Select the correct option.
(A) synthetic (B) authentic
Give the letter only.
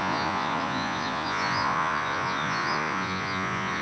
A